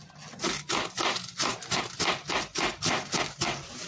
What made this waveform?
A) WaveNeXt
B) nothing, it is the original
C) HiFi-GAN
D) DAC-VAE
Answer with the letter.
B